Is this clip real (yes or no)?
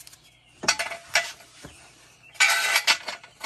yes